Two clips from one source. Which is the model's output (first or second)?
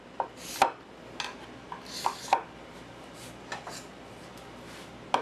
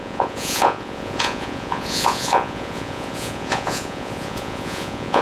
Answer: second